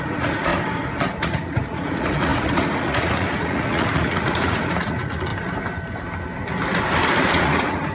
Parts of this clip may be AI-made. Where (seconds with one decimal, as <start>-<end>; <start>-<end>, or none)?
0.0-0.5; 1.2-5.3; 7.3-7.9

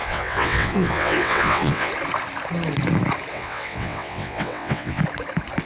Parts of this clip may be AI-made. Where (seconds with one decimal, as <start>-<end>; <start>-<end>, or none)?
0.0-1.9; 3.3-5.0

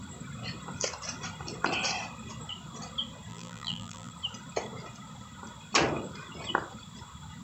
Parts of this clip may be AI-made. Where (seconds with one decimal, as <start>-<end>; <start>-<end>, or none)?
3.3-4.1

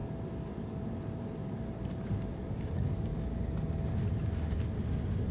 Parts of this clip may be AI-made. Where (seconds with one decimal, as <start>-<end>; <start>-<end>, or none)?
none